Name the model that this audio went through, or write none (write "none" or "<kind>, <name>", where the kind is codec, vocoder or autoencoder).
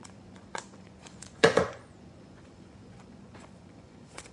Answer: vocoder, Vocos